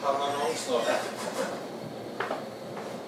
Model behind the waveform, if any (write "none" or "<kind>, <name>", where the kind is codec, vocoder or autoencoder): none